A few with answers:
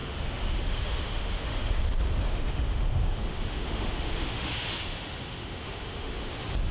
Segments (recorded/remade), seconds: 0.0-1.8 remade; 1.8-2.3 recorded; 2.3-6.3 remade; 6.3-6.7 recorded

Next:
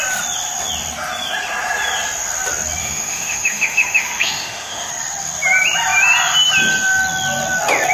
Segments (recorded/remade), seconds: 0.0-2.8 recorded; 2.8-4.9 remade; 4.9-7.9 recorded